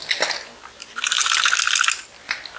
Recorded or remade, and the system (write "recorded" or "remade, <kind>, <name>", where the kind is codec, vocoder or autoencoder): recorded